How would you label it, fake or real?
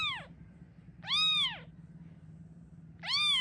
real